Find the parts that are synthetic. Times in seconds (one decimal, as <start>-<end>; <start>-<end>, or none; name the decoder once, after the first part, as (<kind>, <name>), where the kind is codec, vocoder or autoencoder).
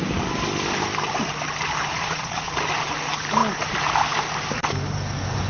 1.9-2.5 (vocoder, Vocos)